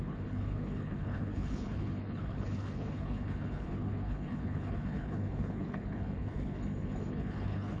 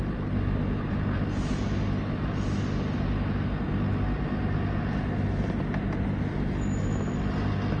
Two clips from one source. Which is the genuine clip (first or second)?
second